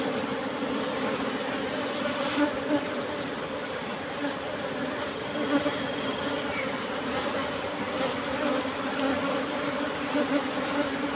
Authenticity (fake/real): fake